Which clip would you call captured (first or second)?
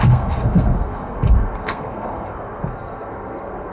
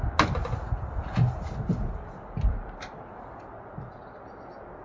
second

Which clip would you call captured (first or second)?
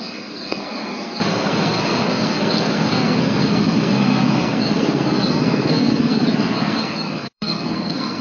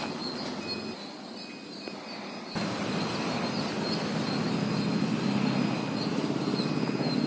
second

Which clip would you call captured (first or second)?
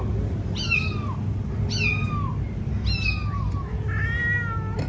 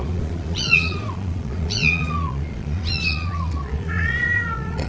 first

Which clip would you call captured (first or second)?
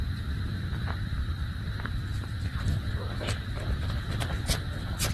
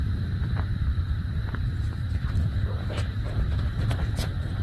first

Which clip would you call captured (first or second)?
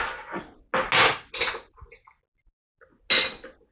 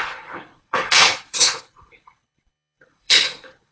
first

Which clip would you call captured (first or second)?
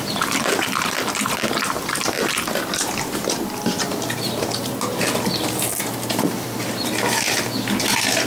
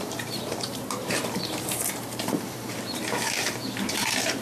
first